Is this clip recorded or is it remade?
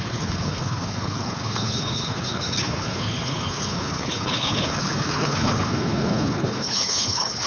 remade